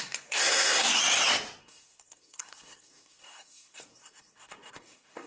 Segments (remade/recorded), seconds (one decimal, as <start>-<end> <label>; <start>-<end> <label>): 0.0-1.0 remade; 1.0-1.6 recorded; 1.6-5.3 remade